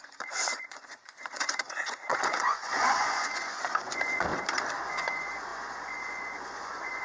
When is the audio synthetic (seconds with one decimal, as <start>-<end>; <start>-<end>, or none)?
0.0-4.3; 4.8-7.0